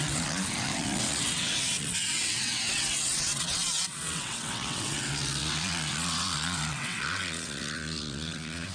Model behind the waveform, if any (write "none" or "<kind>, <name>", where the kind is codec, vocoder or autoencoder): vocoder, WaveNeXt